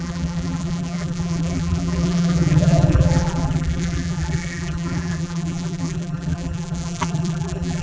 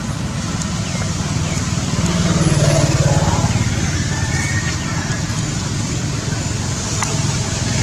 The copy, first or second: first